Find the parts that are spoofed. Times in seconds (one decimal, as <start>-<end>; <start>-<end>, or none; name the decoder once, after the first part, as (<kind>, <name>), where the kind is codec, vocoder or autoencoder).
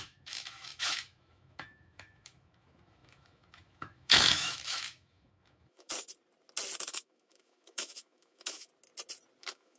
0.0-5.9 (autoencoder, DAC-VAE); 6.9-8.7; 9.4-9.8